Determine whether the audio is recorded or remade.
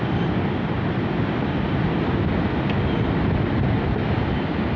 recorded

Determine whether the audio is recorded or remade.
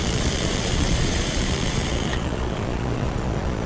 remade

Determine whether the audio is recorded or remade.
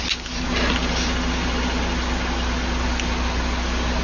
recorded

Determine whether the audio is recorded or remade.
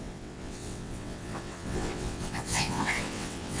remade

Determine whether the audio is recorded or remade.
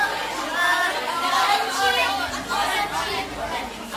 recorded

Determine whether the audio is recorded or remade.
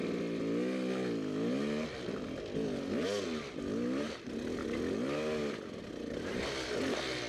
recorded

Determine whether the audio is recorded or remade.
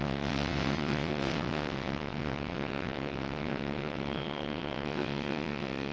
remade